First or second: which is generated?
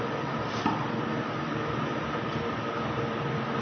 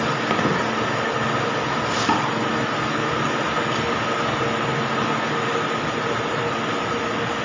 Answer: first